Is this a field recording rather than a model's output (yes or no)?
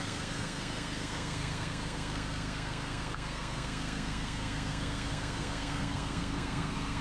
no